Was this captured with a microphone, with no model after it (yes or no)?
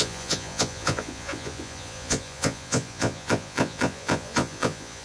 no